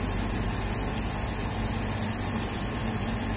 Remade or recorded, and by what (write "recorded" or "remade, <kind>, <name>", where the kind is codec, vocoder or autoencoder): recorded